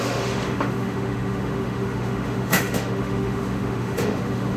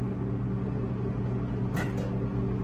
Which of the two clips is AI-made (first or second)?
first